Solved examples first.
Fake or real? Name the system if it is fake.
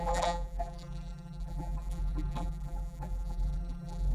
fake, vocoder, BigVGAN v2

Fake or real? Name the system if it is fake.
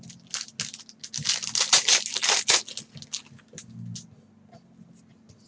real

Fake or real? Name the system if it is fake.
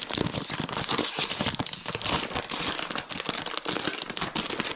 real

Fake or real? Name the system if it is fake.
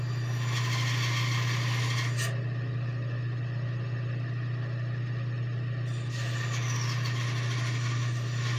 real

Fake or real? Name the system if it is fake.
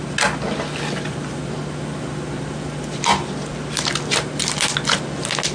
real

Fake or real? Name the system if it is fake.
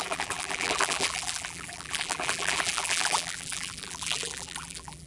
fake, vocoder, BigVGAN v2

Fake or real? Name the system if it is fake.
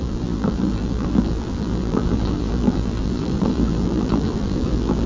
fake, vocoder, BigVGAN v2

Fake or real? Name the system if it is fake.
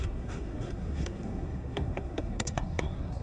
fake, codec, SNAC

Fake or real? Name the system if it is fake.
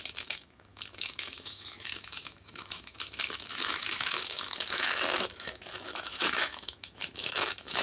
fake, autoencoder, DAC-VAE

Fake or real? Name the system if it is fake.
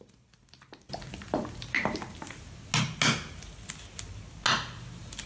real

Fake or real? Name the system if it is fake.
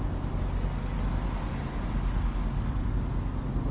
real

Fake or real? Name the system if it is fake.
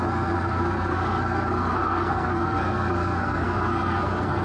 fake, codec, SNAC